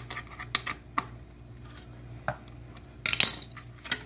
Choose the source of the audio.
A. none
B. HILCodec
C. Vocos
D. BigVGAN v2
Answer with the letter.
A